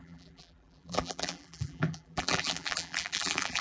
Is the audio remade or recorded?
remade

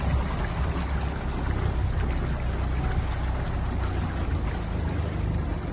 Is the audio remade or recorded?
recorded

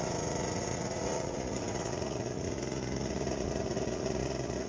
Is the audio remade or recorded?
remade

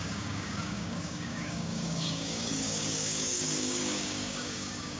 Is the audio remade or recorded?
remade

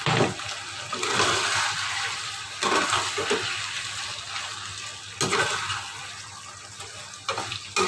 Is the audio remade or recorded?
recorded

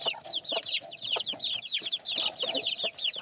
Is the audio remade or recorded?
recorded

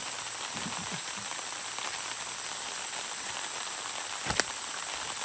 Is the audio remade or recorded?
recorded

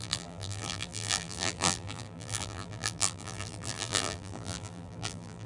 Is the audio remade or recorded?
remade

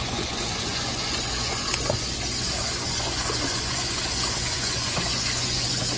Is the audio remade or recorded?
remade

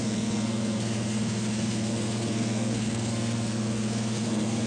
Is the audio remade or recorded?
remade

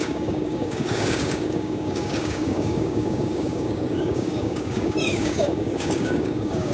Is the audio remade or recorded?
remade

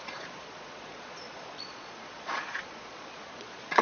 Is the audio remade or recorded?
remade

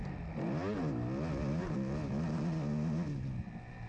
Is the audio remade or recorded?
recorded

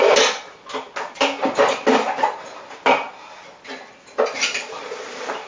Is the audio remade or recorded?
recorded